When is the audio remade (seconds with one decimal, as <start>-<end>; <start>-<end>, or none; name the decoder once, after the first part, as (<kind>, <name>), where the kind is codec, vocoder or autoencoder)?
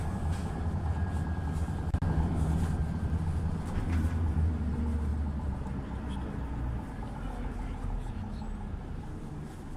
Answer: none